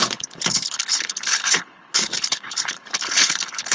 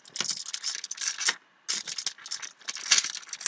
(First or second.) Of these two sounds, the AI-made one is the first